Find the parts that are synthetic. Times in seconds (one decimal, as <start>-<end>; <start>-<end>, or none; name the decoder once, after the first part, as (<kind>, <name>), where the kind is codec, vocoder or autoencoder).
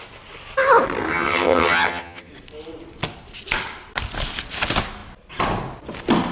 1.1-2.3 (vocoder, HiFi-GAN)